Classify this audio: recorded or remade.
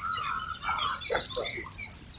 recorded